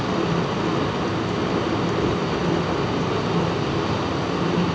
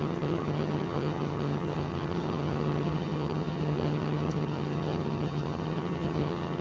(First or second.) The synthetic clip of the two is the second